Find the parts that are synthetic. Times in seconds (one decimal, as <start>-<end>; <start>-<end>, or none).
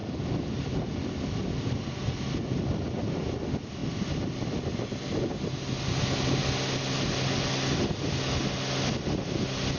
0.0-0.9; 3.8-4.6